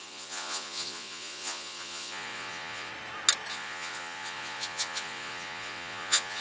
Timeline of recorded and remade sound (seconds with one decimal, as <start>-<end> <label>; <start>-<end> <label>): 0.0-2.9 remade; 2.9-3.5 recorded; 3.5-6.4 remade